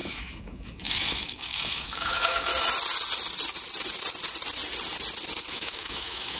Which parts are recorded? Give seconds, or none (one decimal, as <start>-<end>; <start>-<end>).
2.5-5.5